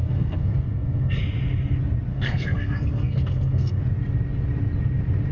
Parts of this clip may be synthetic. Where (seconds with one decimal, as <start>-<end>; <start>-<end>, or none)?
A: 0.0-1.2; 2.1-3.8